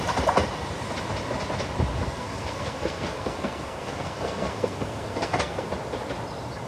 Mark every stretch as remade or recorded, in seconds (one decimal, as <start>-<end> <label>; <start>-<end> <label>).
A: 0.0-1.9 recorded; 1.9-5.7 remade; 5.7-6.7 recorded